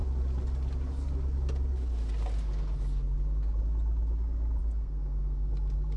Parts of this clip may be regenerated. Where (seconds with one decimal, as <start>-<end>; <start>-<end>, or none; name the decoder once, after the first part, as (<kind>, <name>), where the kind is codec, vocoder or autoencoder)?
4.6-5.5 (codec, SNAC)